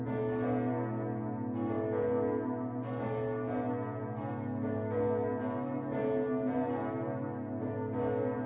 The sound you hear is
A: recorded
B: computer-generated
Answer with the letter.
A